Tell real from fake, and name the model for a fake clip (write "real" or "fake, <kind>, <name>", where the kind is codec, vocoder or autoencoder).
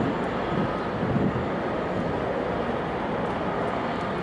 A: real